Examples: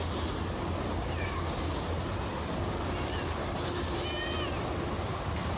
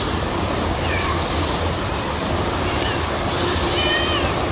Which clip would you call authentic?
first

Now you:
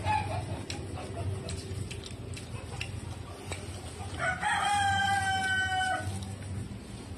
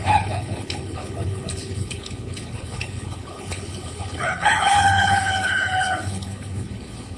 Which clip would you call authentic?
first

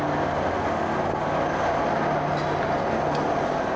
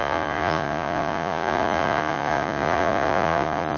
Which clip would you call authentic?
first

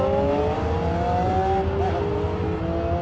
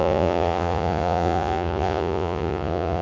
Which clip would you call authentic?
first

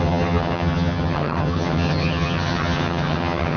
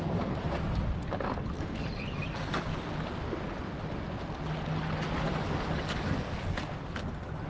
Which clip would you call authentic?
second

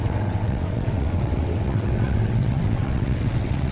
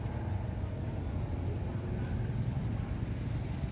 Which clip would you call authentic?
second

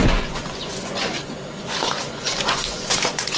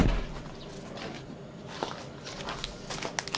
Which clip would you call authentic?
second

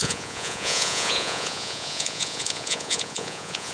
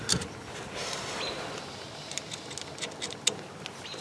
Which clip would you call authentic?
second